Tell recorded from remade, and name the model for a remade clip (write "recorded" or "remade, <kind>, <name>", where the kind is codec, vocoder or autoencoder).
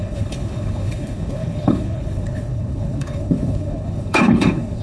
remade, codec, HILCodec